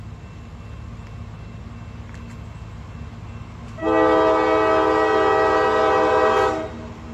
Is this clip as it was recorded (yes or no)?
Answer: yes